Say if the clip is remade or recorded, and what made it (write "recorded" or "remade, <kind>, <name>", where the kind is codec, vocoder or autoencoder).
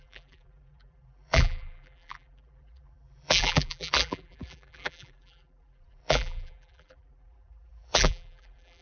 remade, vocoder, BigVGAN v2